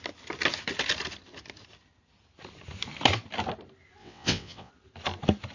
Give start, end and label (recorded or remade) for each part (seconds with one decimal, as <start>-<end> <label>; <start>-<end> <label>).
0.0-4.0 recorded; 4.0-4.7 remade; 4.7-5.5 recorded